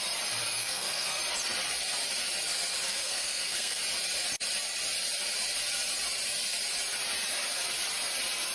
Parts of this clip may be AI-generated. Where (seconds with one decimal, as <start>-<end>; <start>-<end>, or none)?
0.6-1.2; 2.9-3.8